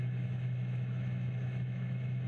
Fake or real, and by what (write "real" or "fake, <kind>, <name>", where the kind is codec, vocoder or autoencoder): fake, autoencoder, DAC-VAE